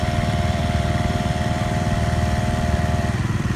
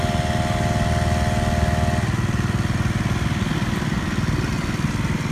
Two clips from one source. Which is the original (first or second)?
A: second